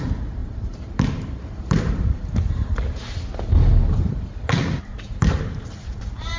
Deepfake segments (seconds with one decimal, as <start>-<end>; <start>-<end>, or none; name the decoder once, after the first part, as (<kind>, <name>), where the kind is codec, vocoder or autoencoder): 0.4-2.3 (vocoder, BigVGAN v2); 4.8-6.0